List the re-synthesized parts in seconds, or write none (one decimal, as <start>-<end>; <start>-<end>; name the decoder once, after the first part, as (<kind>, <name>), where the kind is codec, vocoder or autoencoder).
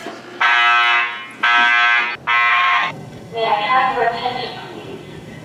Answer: 2.5-5.4 (codec, SNAC)